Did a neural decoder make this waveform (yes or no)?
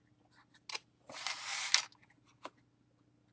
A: no